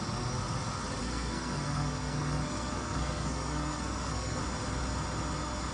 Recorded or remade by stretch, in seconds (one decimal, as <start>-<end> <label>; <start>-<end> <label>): 0.0-1.0 recorded; 1.0-4.4 remade; 4.4-5.7 recorded